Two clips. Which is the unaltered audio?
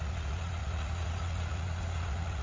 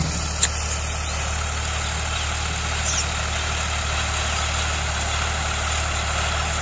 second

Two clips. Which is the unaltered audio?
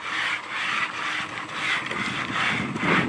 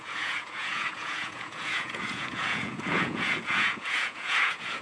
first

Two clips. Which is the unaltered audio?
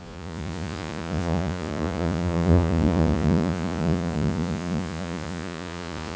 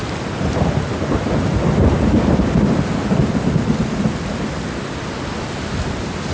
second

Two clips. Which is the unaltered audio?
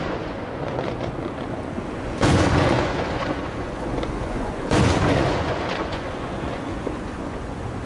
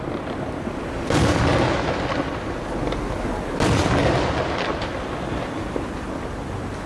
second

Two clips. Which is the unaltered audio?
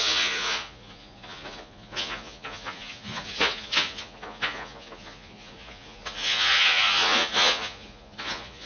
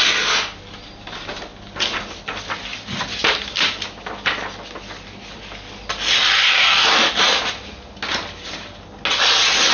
second